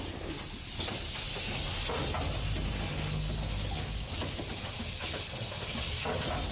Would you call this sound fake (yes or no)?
no